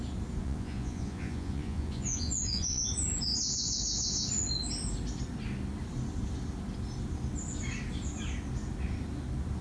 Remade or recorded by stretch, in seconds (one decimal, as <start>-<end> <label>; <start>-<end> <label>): 0.0-0.4 recorded; 0.4-2.8 remade; 2.8-9.6 recorded